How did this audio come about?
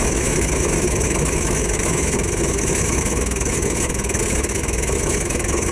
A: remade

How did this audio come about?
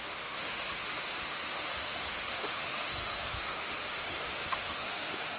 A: remade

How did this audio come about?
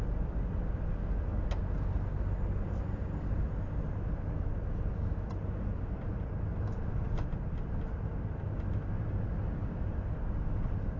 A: recorded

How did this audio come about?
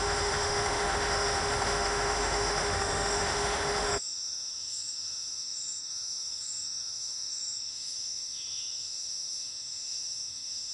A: remade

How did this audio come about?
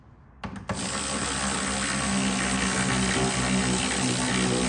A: recorded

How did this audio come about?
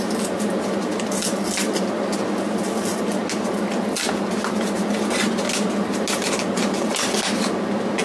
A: recorded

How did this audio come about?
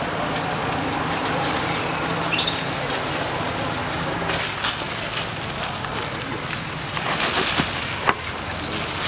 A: recorded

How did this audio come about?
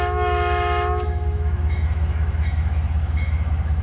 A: remade